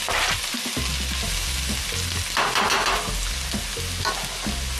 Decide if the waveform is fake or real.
real